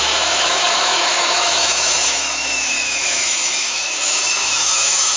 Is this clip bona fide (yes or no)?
no